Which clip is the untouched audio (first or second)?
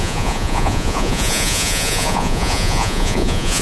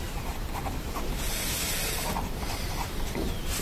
second